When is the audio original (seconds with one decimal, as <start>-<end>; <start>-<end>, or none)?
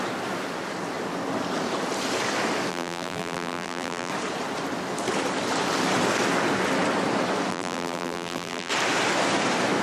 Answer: 0.0-2.7; 4.1-7.5; 8.7-9.8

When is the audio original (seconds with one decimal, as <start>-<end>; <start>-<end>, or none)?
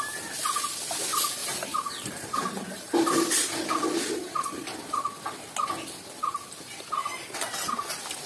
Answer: 0.0-1.4; 4.8-7.0; 7.9-8.3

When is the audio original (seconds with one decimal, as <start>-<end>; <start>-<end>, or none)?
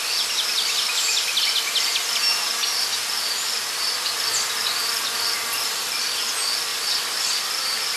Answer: 0.0-6.7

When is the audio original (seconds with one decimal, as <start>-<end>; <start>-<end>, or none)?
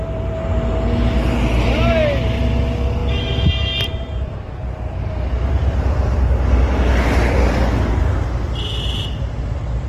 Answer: 0.0-9.9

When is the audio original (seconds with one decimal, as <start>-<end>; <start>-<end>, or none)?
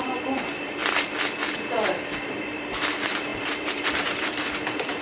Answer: 0.8-1.5